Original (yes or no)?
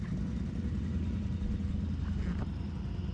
yes